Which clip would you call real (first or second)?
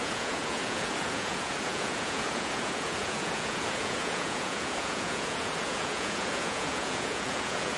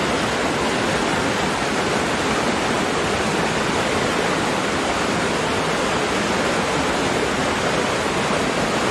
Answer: second